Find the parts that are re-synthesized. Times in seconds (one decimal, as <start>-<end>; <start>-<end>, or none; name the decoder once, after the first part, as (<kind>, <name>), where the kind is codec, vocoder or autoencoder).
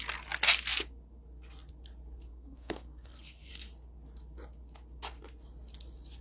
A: 2.3-3.5 (codec, SNAC)